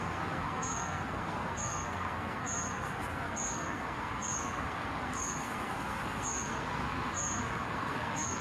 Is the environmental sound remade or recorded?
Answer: remade